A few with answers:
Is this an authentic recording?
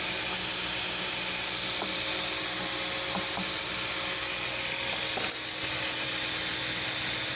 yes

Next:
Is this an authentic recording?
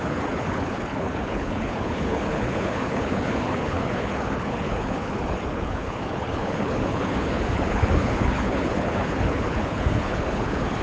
no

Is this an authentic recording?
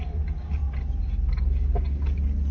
yes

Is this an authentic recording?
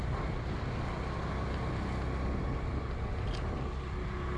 yes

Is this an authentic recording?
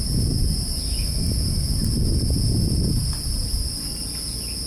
yes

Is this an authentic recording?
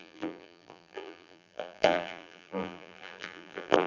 no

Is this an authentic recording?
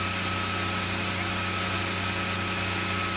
yes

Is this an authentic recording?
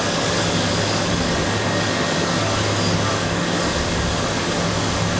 no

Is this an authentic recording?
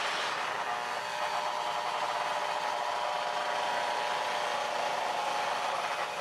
yes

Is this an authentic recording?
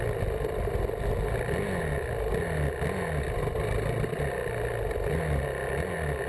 yes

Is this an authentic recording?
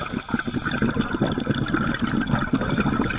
yes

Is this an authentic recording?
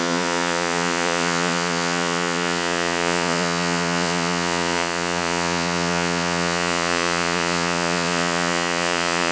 no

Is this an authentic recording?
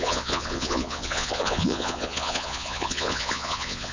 no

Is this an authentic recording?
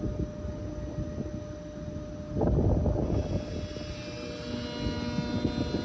yes